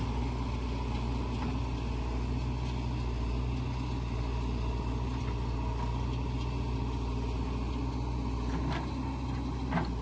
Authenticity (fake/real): real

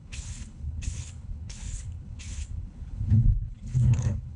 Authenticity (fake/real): fake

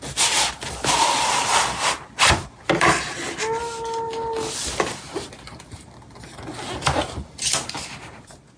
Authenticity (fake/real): real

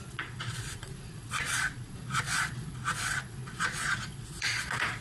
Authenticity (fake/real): fake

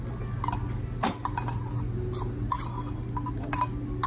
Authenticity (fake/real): real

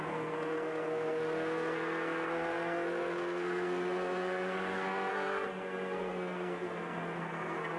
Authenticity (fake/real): fake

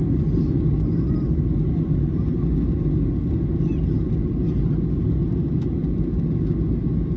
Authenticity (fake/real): real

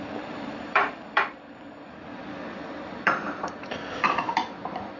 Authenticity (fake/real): fake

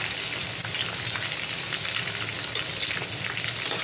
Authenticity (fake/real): real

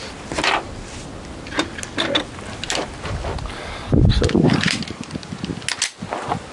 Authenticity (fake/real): real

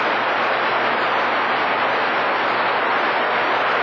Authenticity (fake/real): real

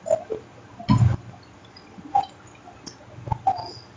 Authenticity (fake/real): real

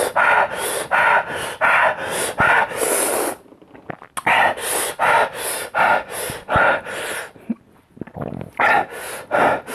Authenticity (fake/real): real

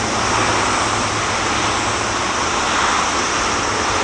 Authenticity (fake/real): real